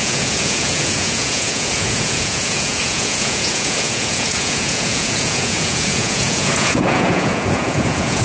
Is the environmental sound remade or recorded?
remade